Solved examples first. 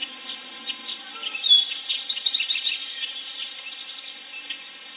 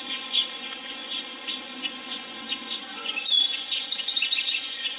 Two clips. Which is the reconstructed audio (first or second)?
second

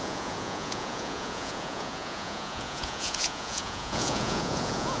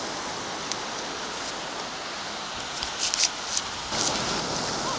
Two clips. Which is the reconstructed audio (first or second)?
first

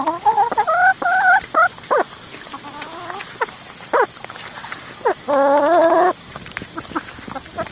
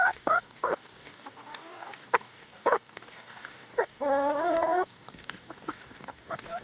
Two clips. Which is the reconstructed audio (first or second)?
second